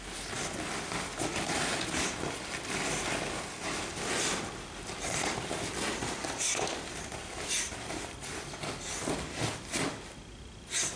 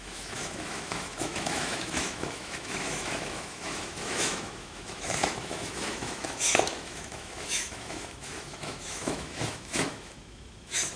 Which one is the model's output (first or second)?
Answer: second